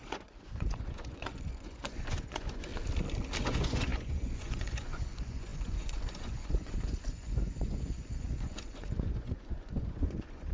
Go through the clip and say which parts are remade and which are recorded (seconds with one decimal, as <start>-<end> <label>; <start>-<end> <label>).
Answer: 0.0-2.7 remade; 2.7-3.4 recorded; 3.4-10.5 remade